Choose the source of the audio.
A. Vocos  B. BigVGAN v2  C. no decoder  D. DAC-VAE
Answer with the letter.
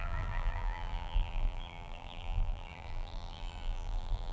B